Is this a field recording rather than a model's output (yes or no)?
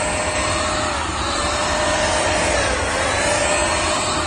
yes